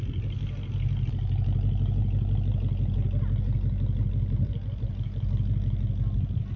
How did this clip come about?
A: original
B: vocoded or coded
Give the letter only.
A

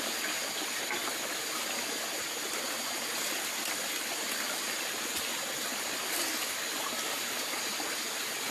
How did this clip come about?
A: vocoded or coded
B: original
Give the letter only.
B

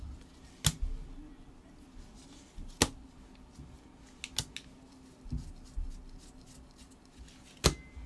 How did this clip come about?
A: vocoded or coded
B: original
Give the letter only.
B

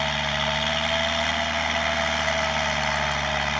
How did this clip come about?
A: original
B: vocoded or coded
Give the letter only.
A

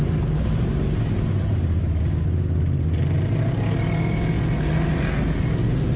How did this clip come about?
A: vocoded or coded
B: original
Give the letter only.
B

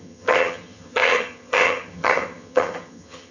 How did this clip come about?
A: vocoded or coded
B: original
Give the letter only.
A